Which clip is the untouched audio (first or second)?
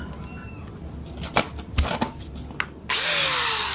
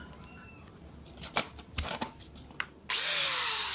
first